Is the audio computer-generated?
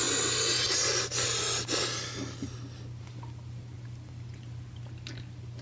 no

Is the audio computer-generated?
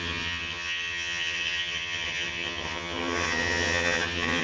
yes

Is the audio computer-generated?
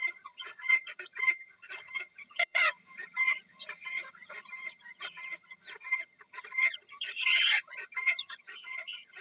yes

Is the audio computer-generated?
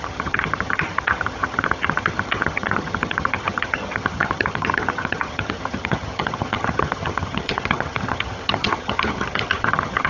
yes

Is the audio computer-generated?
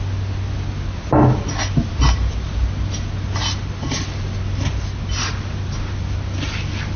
no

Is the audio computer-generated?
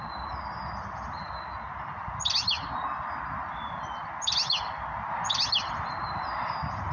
no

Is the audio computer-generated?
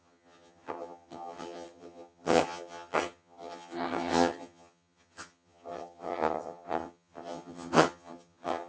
yes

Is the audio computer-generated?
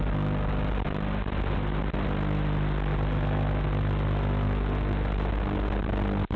no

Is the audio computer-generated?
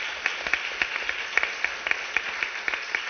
no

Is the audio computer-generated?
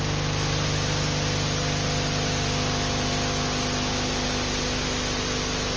no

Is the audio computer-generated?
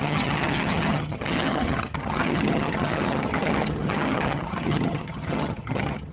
yes